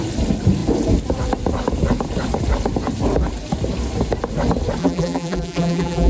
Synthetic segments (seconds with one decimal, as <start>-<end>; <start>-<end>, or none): 4.8-6.1